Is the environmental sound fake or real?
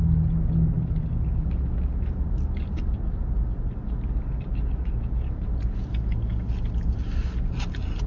real